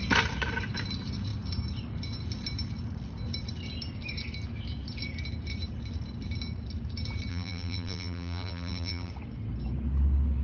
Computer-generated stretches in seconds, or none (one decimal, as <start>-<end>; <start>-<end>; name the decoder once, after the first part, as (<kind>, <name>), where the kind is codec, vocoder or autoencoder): 7.3-9.1 (vocoder, BigVGAN v2)